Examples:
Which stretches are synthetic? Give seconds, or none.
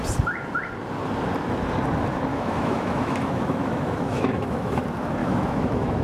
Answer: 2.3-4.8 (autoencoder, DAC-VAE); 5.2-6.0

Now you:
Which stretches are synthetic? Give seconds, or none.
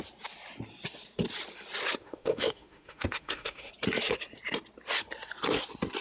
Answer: 2.0-3.7 (autoencoder, DAC-VAE)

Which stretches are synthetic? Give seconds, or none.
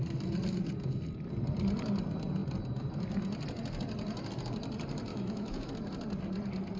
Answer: 5.1-5.7 (autoencoder, DAC-VAE)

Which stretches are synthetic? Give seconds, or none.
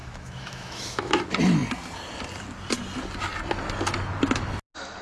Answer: 0.0-1.2 (autoencoder, DAC-VAE)